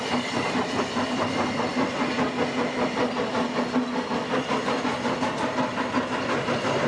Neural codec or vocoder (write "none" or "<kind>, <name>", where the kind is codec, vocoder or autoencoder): none